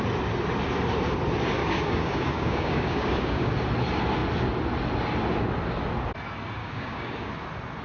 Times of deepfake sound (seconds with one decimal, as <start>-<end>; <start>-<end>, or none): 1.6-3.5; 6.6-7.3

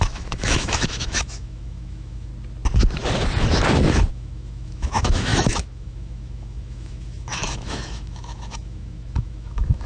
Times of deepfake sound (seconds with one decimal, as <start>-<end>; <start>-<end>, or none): 0.0-2.3; 4.1-9.9

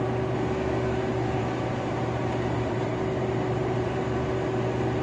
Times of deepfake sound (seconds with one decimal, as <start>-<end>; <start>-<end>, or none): 1.4-4.0

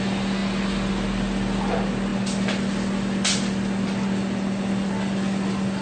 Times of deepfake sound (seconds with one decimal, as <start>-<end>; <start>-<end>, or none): none

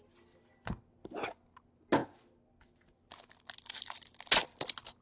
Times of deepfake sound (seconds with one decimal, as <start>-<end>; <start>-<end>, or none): none

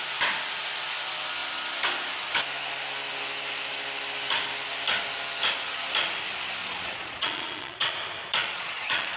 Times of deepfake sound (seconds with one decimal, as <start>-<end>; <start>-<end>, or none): 6.6-7.9; 8.4-9.2